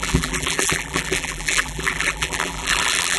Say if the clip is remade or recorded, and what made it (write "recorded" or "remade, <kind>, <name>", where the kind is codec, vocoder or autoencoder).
remade, vocoder, BigVGAN v2